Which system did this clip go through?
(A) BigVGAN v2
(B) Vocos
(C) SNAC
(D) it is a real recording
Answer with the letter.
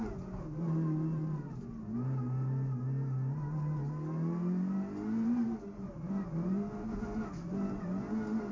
D